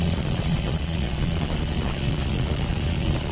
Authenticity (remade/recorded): remade